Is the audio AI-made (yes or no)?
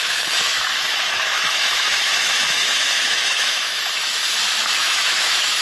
yes